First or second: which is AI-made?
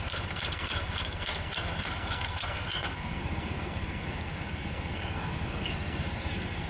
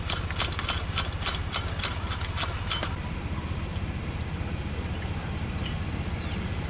first